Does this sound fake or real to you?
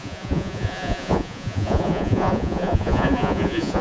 fake